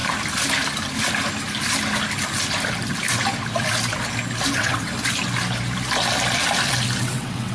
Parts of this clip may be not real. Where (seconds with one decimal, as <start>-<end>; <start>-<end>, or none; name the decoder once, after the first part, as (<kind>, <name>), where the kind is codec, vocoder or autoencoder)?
4.5-4.9 (vocoder, WaveNeXt); 7.0-7.5